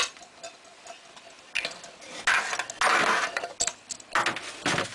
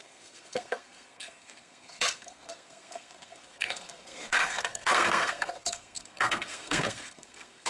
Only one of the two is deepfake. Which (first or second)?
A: second